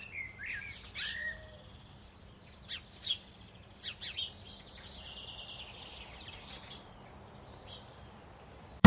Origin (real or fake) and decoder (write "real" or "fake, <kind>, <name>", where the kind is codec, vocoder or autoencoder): fake, vocoder, BigVGAN v2